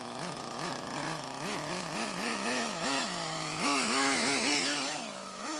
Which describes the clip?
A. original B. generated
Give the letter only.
B